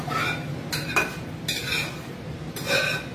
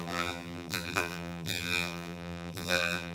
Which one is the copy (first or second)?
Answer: second